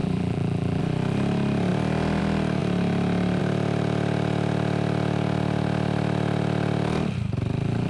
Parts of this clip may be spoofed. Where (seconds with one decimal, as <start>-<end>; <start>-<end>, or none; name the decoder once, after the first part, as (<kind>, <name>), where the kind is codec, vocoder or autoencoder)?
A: 0.0-0.8 (vocoder, BigVGAN v2)